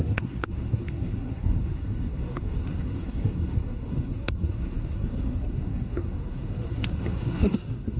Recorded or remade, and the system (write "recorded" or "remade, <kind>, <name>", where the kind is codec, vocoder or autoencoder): remade, codec, SNAC